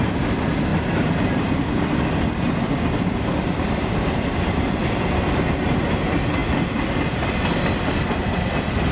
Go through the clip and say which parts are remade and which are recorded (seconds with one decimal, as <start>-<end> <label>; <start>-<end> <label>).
0.0-8.9 recorded